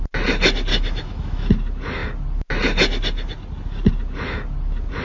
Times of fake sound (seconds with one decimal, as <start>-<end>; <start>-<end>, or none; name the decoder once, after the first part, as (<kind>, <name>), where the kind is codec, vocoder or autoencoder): 0.7-1.5 (autoencoder, DAC-VAE)